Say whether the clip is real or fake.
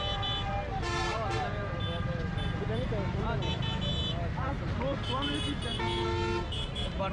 real